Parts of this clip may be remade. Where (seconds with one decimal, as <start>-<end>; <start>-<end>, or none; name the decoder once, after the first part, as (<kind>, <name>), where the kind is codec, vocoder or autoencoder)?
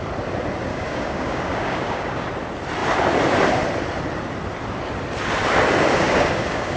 0.7-2.3 (codec, DAC); 5.9-6.8